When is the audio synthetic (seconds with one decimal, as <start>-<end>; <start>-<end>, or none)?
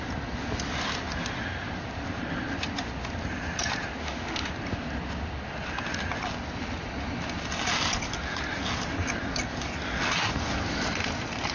4.0-4.5